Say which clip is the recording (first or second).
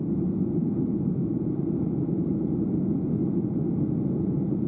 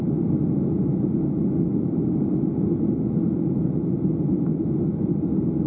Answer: second